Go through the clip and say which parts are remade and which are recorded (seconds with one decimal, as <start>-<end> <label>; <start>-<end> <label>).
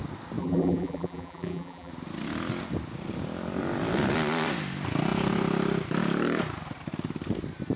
0.0-0.4 recorded; 0.4-1.9 remade; 1.9-7.8 recorded